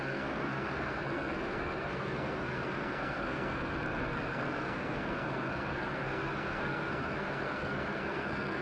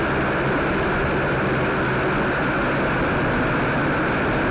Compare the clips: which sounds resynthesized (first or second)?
first